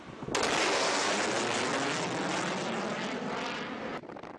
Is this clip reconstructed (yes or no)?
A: no